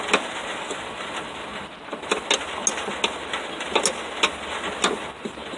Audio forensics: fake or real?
real